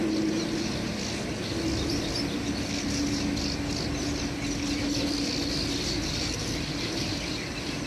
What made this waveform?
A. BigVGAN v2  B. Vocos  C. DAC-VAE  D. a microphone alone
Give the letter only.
D